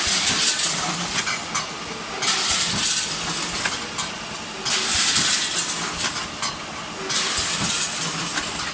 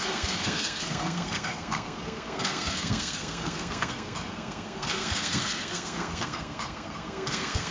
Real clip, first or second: first